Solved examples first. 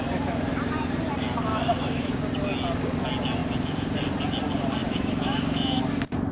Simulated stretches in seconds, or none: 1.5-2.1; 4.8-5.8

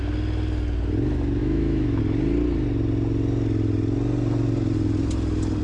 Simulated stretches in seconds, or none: 1.4-2.0

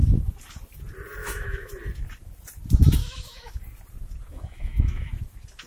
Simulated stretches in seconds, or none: 1.2-1.7; 3.0-3.6; 4.3-5.1

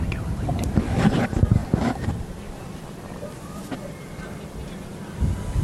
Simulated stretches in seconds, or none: none

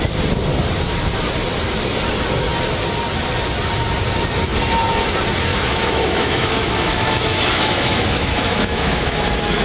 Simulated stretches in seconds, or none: 5.5-9.2

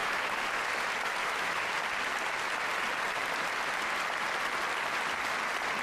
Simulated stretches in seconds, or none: 0.0-0.6; 1.2-1.7

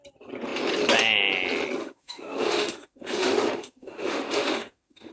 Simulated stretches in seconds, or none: 1.8-5.1